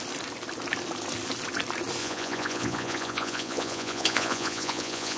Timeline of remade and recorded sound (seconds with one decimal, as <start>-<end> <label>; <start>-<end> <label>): 0.0-2.0 recorded; 2.0-5.2 remade